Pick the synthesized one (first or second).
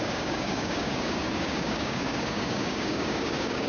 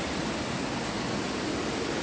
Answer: first